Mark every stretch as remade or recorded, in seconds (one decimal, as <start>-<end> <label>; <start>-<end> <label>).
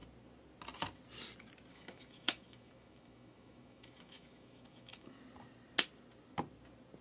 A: 0.0-1.7 recorded; 1.7-5.2 remade; 5.2-7.0 recorded